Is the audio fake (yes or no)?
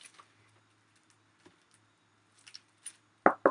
no